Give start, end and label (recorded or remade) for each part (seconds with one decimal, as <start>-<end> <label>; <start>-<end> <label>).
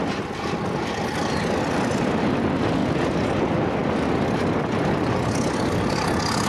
0.0-1.2 recorded; 1.2-2.2 remade; 2.2-3.8 recorded; 3.8-5.9 remade; 5.9-6.5 recorded